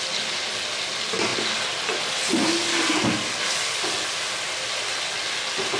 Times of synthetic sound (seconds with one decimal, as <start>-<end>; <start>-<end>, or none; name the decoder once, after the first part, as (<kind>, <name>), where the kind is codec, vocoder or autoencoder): none